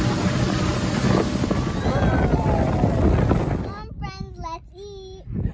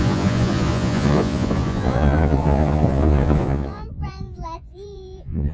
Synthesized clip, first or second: second